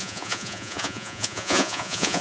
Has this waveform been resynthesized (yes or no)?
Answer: yes